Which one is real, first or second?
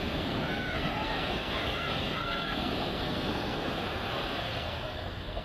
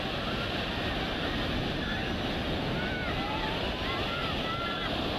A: second